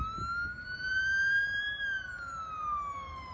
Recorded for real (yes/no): yes